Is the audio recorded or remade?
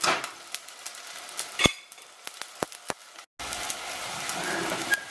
recorded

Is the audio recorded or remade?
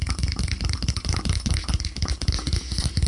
recorded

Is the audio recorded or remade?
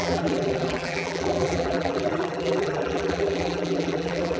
remade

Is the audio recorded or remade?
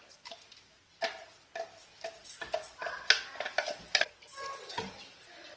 recorded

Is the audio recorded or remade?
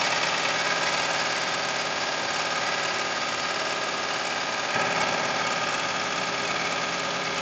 recorded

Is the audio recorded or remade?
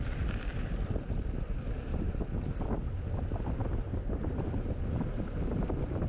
recorded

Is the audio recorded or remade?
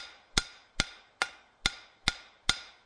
recorded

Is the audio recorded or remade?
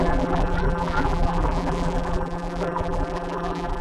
remade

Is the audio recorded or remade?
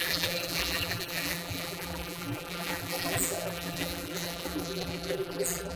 remade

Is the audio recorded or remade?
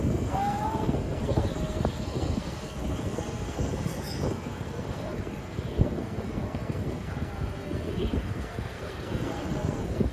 remade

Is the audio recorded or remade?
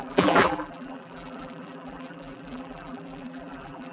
remade